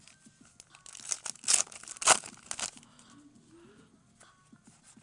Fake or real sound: real